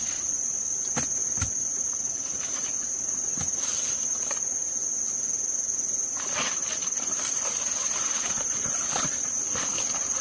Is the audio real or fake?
real